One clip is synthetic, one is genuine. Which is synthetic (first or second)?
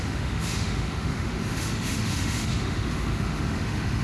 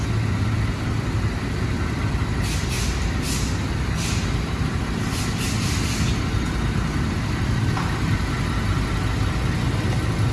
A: first